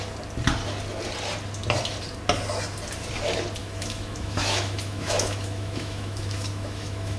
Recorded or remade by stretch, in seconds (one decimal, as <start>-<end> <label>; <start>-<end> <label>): 0.0-3.6 recorded; 3.6-7.2 remade